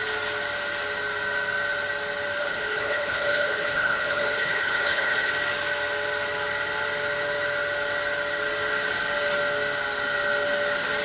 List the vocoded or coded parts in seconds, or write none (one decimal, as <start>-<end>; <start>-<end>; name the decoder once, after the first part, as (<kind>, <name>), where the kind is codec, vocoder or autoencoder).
2.4-5.3 (codec, HILCodec)